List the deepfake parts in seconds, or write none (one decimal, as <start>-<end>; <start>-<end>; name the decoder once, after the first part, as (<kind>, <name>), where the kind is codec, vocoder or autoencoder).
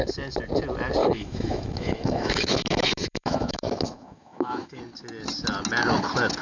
1.0-4.8 (autoencoder, DAC-VAE)